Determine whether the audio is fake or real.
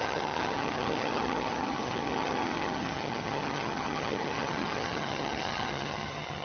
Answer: fake